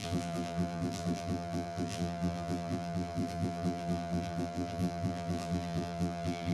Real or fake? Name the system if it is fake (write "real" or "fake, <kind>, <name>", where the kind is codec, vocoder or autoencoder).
fake, vocoder, BigVGAN v2